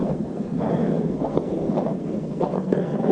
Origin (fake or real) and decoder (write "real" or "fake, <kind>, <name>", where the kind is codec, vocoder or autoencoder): fake, codec, SNAC